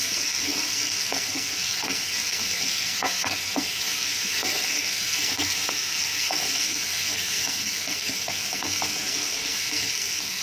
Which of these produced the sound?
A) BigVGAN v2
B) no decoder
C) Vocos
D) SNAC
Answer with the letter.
D